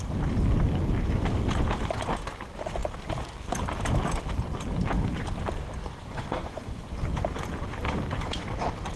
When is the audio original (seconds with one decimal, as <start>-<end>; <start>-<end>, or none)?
0.0-5.8; 6.9-9.0